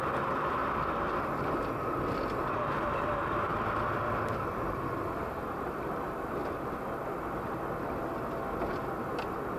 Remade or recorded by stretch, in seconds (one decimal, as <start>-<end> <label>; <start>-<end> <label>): 0.0-9.6 recorded